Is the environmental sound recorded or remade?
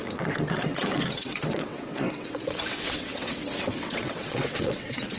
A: remade